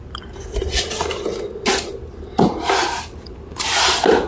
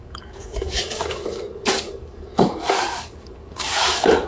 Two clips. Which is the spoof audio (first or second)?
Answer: second